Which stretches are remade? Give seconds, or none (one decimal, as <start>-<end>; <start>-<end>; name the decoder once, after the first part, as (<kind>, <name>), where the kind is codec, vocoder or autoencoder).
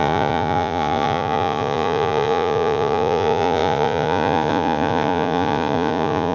0.0-6.3 (vocoder, Vocos)